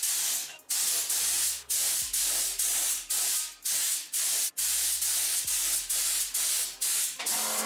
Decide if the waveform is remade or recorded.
recorded